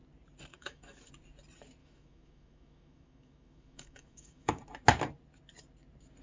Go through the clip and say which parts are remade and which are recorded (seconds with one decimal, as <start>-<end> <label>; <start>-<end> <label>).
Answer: 0.0-0.5 recorded; 0.5-1.1 remade; 1.1-1.8 recorded; 1.8-4.6 remade; 4.6-6.2 recorded